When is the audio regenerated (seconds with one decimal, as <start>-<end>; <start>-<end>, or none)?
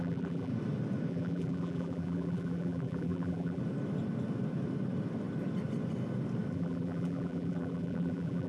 0.0-0.5; 1.1-3.6; 6.5-8.5